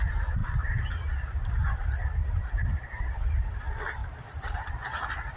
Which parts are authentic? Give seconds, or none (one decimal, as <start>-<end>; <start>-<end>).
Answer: 0.0-0.4; 3.6-4.0; 4.7-5.4